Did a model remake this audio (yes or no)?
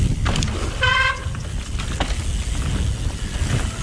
no